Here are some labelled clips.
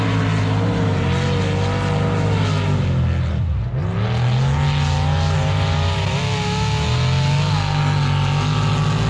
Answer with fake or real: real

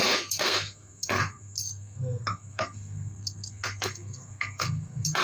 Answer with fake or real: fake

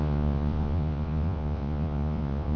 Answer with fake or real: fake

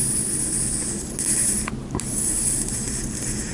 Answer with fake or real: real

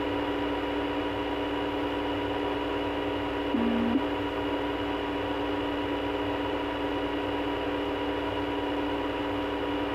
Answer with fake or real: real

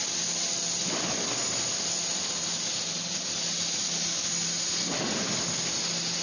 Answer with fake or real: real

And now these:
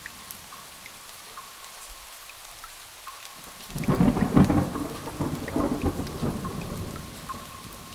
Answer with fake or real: real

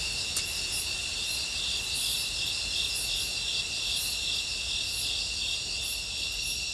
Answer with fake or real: real